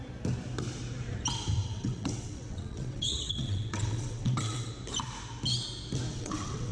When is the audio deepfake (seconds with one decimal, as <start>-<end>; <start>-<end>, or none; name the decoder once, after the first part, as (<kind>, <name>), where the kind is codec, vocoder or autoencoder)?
1.6-4.7 (vocoder, WaveNeXt); 6.1-6.7